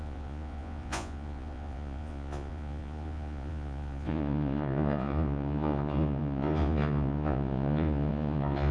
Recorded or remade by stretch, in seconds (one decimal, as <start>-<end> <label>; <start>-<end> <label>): 0.0-8.7 remade